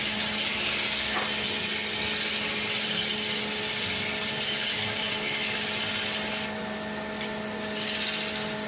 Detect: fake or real real